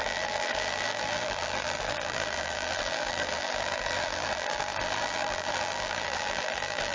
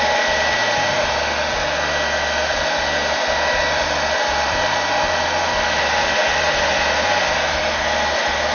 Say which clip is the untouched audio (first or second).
second